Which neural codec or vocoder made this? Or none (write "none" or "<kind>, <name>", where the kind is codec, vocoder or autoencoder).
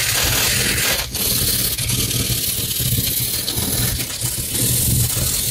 none